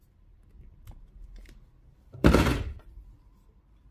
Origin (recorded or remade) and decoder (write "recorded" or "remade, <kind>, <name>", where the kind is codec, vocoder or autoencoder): remade, vocoder, BigVGAN v2